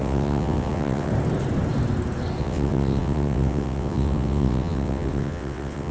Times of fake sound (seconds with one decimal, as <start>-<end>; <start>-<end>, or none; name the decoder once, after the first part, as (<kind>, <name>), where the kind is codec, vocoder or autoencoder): 0.0-1.1 (vocoder, WaveNeXt); 2.4-5.9